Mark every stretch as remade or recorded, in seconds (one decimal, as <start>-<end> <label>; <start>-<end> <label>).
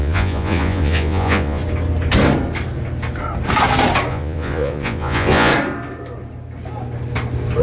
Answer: 0.0-1.6 remade; 1.6-4.1 recorded; 4.1-5.5 remade; 5.5-7.6 recorded